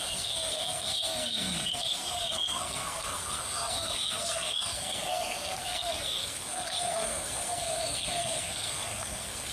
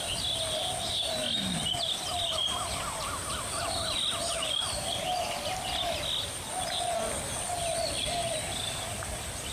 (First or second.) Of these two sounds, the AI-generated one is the first